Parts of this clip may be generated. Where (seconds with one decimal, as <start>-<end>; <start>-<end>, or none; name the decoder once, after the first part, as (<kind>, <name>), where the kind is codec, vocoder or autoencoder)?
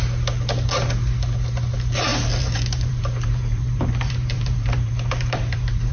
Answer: 2.1-5.9 (vocoder, BigVGAN v2)